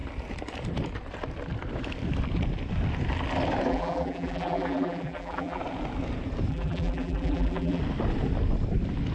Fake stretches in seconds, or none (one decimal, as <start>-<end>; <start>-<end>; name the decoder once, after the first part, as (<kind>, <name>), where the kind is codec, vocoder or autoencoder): 3.7-5.6 (vocoder, BigVGAN v2); 6.5-7.8